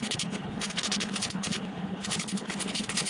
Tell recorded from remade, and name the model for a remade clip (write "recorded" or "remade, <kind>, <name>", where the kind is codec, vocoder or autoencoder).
remade, codec, HILCodec